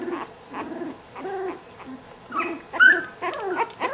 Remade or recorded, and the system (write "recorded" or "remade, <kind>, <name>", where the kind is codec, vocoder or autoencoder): recorded